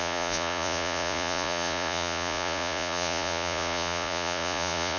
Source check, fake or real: fake